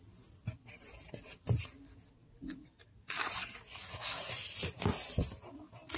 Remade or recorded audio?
recorded